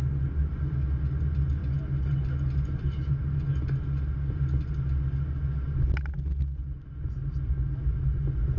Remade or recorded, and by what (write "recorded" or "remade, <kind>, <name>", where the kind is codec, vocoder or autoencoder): recorded